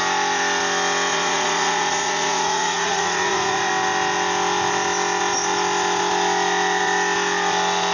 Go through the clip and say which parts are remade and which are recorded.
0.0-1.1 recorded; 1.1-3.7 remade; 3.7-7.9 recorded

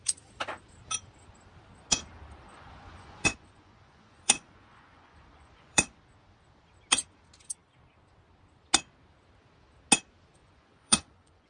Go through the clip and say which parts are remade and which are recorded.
0.0-2.5 recorded; 2.5-6.0 remade; 6.0-10.4 recorded; 10.4-11.5 remade

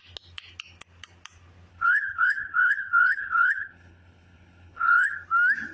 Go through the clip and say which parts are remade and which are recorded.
0.0-1.7 recorded; 1.7-5.1 remade; 5.1-5.7 recorded

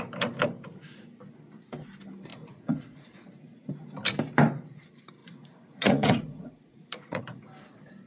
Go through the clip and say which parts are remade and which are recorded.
0.0-2.3 recorded; 2.3-3.7 remade; 3.7-5.2 recorded; 5.2-7.2 remade; 7.2-8.1 recorded

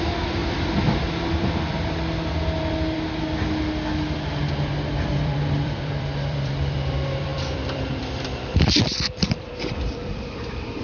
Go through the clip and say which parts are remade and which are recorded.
0.0-0.4 remade; 0.4-4.5 recorded; 4.5-10.8 remade

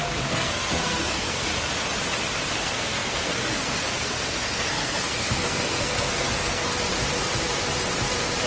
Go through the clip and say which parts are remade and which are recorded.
0.0-1.5 remade; 1.5-2.6 recorded; 2.6-6.7 remade; 6.7-8.5 recorded

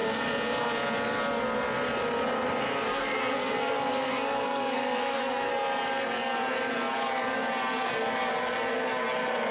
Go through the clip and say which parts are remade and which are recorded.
0.0-2.9 recorded; 2.9-5.5 remade; 5.5-9.5 recorded

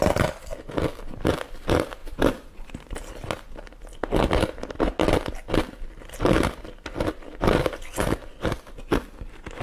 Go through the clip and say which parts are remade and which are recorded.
0.0-2.0 recorded; 2.0-3.1 remade; 3.1-9.6 recorded